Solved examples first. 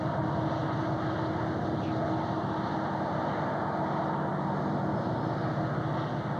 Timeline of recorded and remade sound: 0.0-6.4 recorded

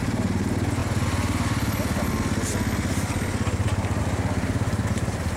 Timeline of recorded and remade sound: 0.0-5.4 recorded

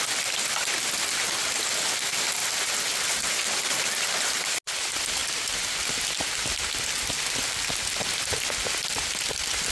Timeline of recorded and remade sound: 0.0-9.7 recorded

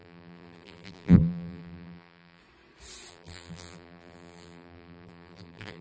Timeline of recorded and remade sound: 0.0-2.4 remade; 2.4-3.1 recorded; 3.1-5.8 remade

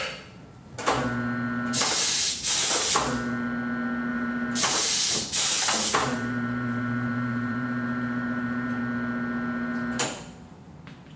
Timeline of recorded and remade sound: 0.0-4.1 recorded; 4.1-5.6 remade; 5.6-6.0 recorded; 6.0-8.8 remade; 8.8-11.2 recorded

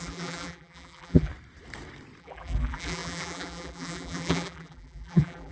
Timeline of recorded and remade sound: 0.0-1.3 remade; 1.3-2.2 recorded; 2.2-5.5 remade

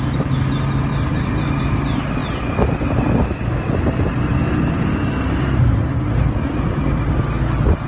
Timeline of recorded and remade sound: 0.0-7.9 recorded